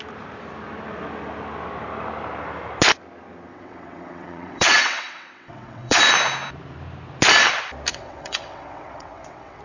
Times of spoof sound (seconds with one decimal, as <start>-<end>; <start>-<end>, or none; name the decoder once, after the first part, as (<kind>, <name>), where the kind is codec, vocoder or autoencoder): 3.5-6.0 (vocoder, WaveNeXt); 7.9-9.6